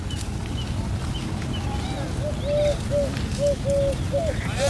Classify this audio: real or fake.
real